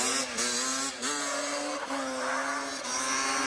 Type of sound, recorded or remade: recorded